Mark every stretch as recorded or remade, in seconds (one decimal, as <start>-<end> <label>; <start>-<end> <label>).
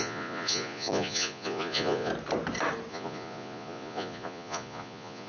0.0-2.1 remade; 2.1-2.9 recorded; 2.9-5.3 remade